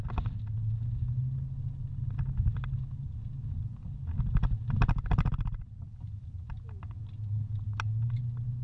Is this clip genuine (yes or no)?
yes